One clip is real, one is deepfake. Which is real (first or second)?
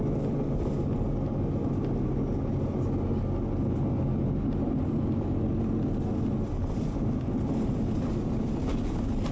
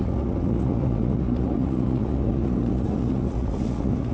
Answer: first